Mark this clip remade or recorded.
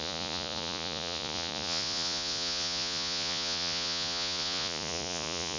remade